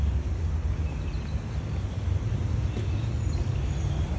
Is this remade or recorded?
recorded